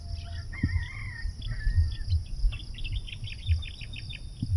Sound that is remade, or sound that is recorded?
recorded